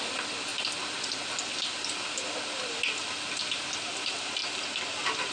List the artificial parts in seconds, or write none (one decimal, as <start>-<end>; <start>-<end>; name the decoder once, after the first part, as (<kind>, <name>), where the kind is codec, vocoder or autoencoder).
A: none

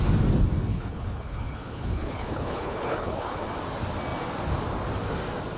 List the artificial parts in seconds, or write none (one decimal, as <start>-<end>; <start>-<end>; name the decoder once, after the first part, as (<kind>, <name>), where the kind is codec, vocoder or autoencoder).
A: 0.7-3.4 (codec, HILCodec)

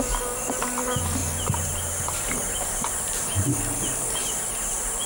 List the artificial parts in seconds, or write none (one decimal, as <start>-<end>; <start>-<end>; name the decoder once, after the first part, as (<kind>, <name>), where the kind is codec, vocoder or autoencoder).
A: 1.2-3.6 (vocoder, BigVGAN v2); 4.2-5.1